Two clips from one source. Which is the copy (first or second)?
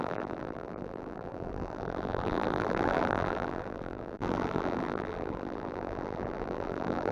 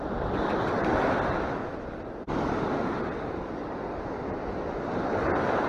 first